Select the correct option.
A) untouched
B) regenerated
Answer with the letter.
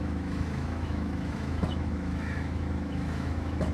B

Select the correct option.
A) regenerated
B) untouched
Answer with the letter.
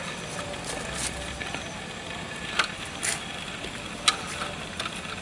B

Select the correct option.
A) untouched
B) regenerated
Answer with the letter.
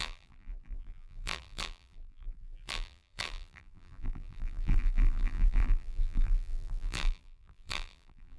B